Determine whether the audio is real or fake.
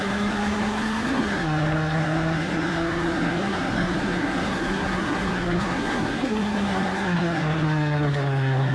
fake